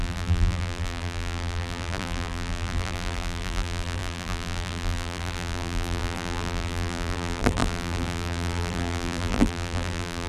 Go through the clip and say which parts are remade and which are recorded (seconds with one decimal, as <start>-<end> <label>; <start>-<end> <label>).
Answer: 0.0-10.3 remade